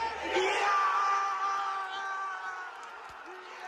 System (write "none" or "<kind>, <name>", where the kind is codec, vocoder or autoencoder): none